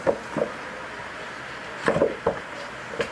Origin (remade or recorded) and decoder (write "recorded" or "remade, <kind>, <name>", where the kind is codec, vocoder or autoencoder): recorded